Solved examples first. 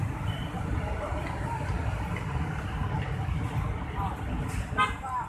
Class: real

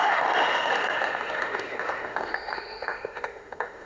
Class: fake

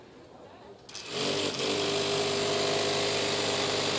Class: real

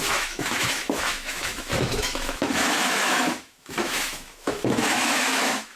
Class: fake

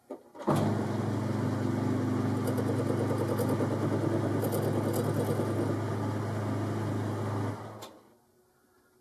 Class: real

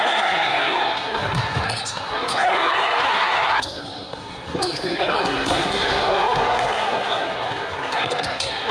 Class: fake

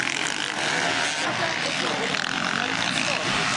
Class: real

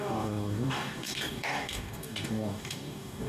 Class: fake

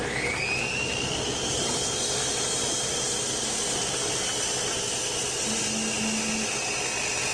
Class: real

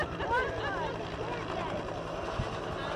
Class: real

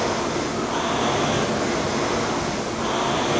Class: real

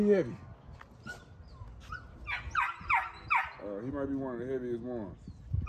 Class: real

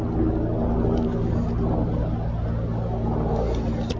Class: real